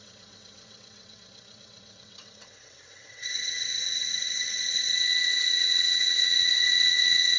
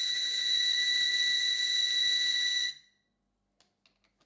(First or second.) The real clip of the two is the second